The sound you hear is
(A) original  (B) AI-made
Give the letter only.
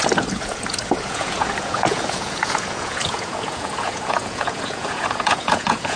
B